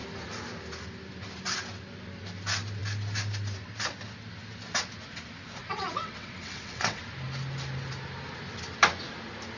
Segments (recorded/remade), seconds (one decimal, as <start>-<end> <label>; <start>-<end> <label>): 0.0-5.6 recorded; 5.6-7.0 remade; 7.0-9.6 recorded